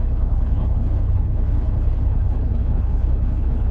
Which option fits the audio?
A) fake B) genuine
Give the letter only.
A